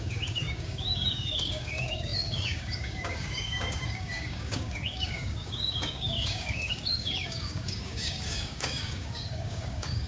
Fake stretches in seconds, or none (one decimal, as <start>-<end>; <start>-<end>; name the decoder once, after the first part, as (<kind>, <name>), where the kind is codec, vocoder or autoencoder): 0.0-10.1 (codec, DAC)